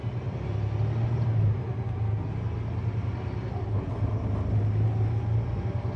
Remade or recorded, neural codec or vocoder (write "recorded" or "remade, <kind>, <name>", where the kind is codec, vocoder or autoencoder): recorded